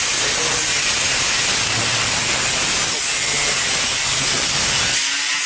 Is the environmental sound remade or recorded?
recorded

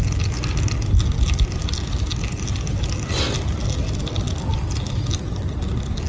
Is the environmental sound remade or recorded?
recorded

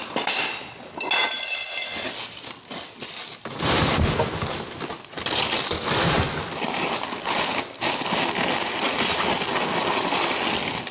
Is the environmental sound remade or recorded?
recorded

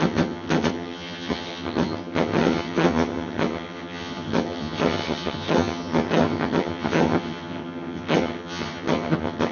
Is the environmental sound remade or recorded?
remade